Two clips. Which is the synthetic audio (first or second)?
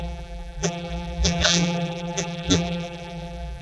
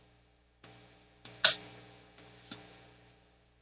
first